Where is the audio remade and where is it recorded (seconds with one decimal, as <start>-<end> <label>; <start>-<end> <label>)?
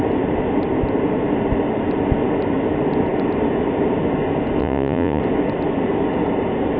0.0-4.6 recorded; 4.6-5.2 remade; 5.2-6.8 recorded